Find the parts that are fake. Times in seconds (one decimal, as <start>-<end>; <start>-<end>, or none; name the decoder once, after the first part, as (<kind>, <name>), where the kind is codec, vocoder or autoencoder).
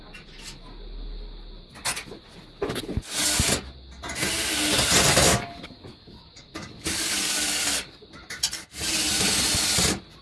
5.3-8.0 (codec, DAC)